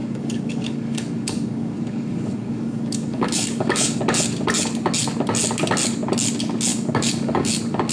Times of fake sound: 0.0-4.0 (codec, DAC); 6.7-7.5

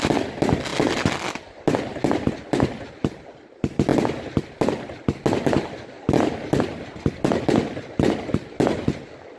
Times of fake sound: none

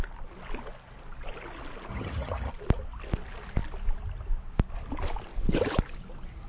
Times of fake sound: 1.9-2.5 (vocoder, HiFi-GAN)

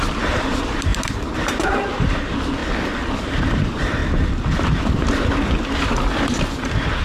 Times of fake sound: 0.0-2.6 (vocoder, BigVGAN v2); 3.2-4.0

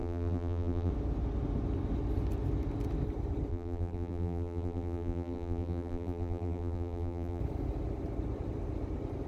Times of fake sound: 0.0-0.9 (vocoder, BigVGAN v2); 3.5-7.4

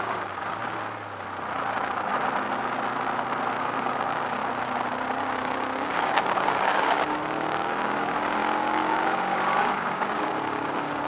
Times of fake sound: 0.0-0.6 (codec, DAC); 3.6-4.4; 5.2-11.1